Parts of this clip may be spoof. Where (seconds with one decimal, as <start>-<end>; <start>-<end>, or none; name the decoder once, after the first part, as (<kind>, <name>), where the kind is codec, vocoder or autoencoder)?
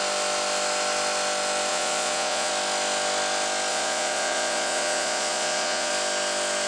1.7-2.5 (vocoder, Vocos); 3.7-5.9